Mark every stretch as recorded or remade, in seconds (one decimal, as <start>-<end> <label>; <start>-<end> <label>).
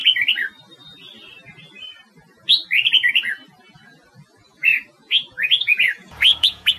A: 0.0-3.7 recorded; 3.7-6.8 remade